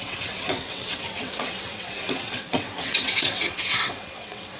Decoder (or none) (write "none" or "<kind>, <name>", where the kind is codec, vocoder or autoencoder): vocoder, WaveNeXt